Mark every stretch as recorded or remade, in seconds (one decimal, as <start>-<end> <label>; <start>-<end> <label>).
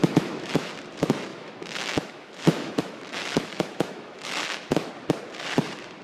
0.0-0.7 remade; 0.7-1.3 recorded; 1.3-4.9 remade; 4.9-6.0 recorded